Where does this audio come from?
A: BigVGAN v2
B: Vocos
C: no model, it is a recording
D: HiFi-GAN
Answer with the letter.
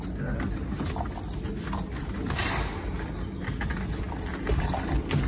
C